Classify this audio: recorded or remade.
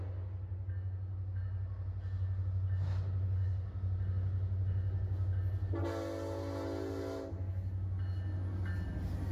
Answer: recorded